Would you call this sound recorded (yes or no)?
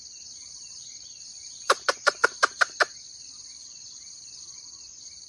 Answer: no